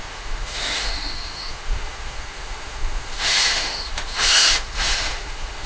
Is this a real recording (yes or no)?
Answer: no